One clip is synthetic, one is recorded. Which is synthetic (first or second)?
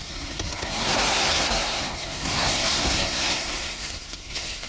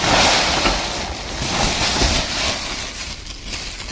first